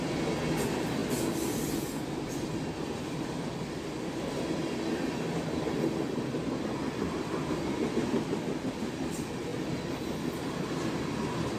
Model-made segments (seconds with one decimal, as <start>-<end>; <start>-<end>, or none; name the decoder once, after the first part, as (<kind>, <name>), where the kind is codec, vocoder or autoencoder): none